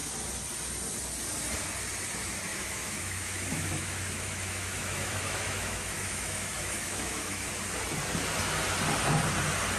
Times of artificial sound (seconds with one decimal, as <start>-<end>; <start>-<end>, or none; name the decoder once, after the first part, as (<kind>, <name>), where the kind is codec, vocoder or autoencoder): 2.5-7.5 (autoencoder, DAC-VAE)